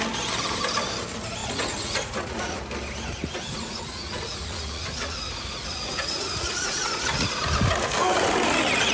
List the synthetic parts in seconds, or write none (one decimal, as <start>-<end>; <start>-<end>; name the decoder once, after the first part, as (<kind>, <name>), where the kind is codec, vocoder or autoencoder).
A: 1.4-2.6 (vocoder, Vocos); 3.2-7.4